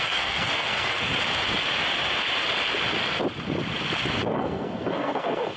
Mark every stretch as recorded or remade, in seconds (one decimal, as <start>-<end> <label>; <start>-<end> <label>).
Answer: 0.0-1.1 remade; 1.1-4.2 recorded; 4.2-5.6 remade